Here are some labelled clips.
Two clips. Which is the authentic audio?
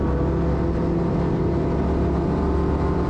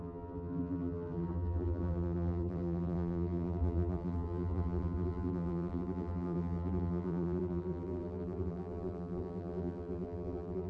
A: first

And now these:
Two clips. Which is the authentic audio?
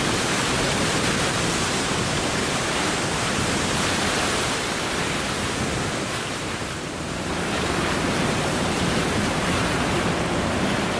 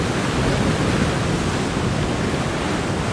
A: second